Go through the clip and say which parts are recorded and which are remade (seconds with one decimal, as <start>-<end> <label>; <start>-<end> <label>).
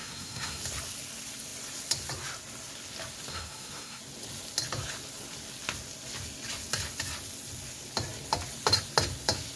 0.0-0.6 remade; 0.6-3.3 recorded; 3.3-4.0 remade; 4.0-9.6 recorded